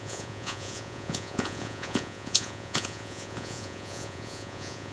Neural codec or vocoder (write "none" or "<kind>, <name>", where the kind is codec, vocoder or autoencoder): vocoder, Vocos